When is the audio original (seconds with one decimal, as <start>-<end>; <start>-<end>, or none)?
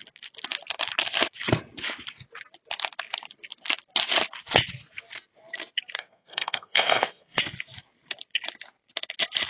0.0-6.0; 7.4-9.5